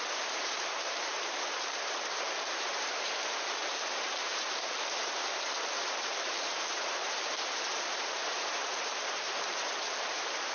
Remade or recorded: remade